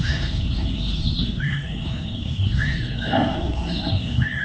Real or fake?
fake